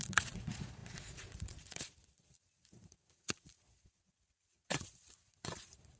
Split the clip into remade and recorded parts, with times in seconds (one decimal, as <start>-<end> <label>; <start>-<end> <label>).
0.0-6.0 remade